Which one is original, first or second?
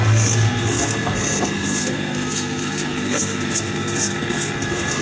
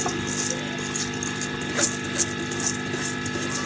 second